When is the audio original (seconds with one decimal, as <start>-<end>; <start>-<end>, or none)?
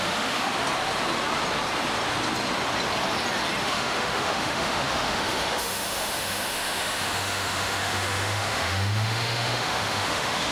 0.5-3.6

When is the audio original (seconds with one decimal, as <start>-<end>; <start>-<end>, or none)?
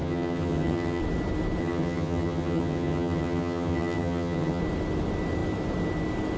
1.0-1.6; 4.6-6.4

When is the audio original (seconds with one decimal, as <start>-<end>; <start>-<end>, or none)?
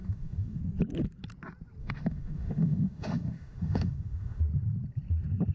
0.6-1.8; 4.4-5.5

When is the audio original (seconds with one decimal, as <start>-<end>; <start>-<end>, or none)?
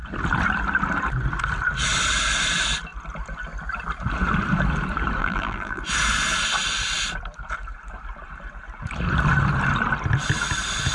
0.0-5.2; 5.8-10.9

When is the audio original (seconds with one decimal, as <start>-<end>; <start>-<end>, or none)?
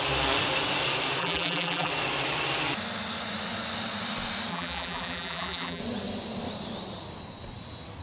0.0-1.2; 1.9-4.5; 5.8-8.0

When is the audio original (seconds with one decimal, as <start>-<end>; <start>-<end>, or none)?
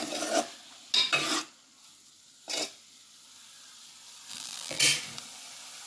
0.0-4.3; 4.8-5.9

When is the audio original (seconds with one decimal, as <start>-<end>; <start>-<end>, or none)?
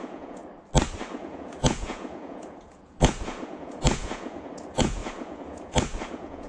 0.4-1.1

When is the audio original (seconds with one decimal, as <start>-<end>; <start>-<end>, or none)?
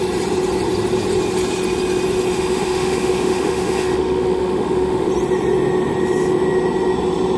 0.0-2.3; 5.1-7.4